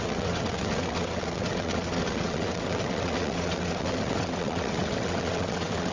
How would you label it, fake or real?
fake